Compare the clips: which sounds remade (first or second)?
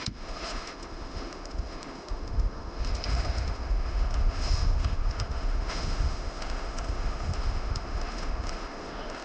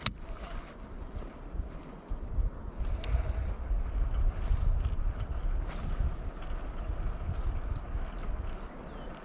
first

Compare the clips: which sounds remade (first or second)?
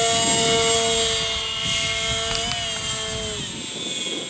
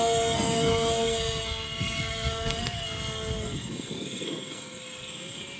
second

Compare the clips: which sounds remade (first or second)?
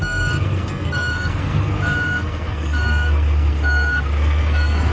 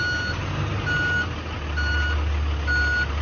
first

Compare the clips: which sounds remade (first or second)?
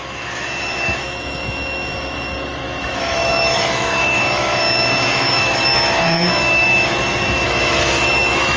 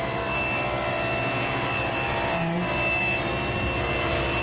first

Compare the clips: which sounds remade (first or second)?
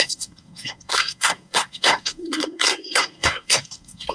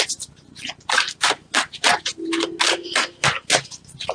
first